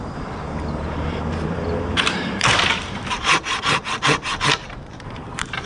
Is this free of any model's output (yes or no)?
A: no